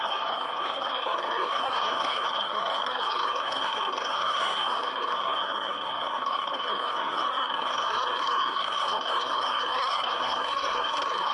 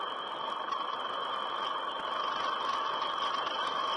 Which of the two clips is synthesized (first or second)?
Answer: first